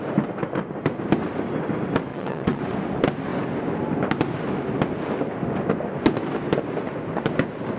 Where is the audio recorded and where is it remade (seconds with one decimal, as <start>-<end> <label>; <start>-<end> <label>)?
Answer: 0.0-2.1 recorded; 2.1-2.6 remade; 2.6-7.8 recorded